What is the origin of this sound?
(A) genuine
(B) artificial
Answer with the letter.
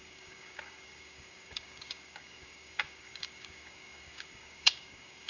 B